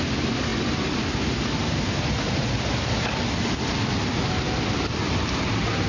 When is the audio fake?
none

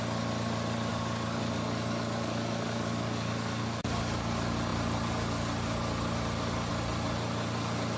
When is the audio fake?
0.9-3.8 (codec, DAC)

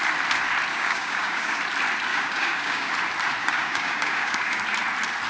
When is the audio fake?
0.7-1.6 (codec, DAC); 2.1-2.9; 3.4-4.6

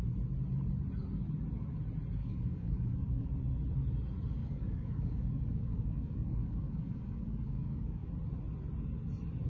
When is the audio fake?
2.2-3.3 (codec, DAC); 4.4-8.1

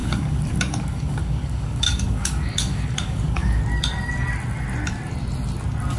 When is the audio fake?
0.0-3.6 (codec, DAC)

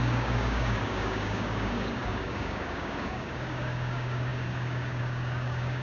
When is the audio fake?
0.0-5.8 (codec, DAC)

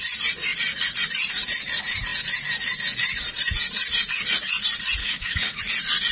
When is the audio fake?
5.0-5.6 (codec, DAC)